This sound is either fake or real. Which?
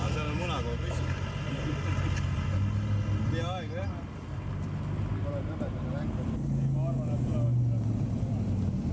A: real